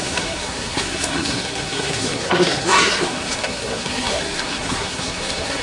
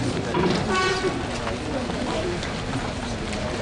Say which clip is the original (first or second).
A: second